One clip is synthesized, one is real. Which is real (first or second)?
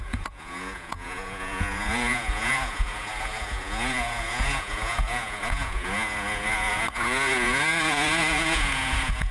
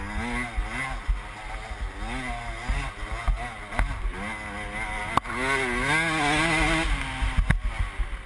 second